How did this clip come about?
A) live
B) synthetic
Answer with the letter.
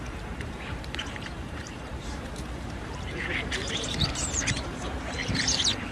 B